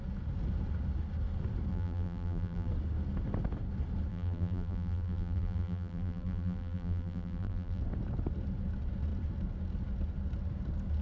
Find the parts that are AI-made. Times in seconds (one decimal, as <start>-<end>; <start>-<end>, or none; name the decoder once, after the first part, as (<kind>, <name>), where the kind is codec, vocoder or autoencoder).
1.7-2.7 (vocoder, BigVGAN v2); 4.1-7.8